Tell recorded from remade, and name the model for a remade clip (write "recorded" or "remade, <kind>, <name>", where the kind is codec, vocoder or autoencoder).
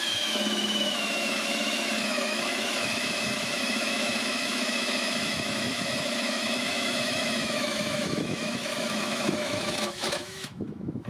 remade, autoencoder, DAC-VAE